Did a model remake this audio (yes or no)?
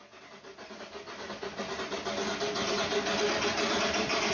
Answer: no